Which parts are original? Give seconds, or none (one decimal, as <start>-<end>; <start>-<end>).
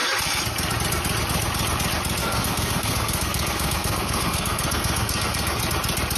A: 0.0-2.2; 5.6-6.2